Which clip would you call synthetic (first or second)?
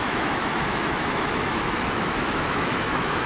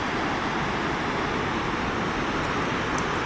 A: first